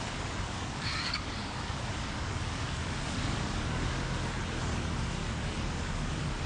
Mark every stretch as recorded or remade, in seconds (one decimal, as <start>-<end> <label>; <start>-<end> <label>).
0.0-6.5 remade